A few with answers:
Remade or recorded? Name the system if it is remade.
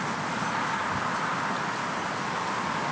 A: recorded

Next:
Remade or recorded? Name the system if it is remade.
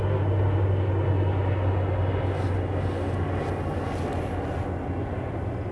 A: recorded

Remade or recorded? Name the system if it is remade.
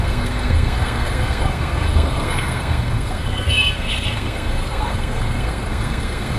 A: remade, codec, SNAC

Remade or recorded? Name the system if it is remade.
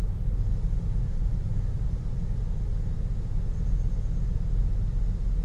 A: recorded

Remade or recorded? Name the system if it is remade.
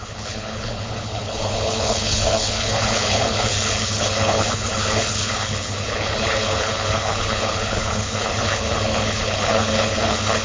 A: remade, codec, HILCodec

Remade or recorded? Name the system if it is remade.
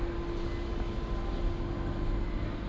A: recorded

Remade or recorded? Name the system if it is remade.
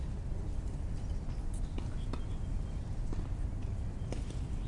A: recorded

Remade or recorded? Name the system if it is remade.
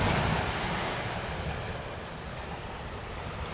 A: recorded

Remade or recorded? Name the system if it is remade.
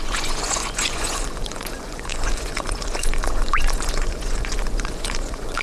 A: remade, vocoder, Vocos